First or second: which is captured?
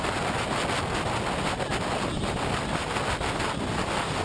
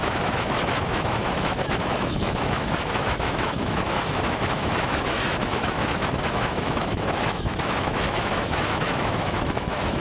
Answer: first